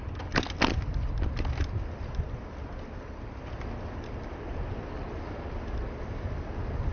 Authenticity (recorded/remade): recorded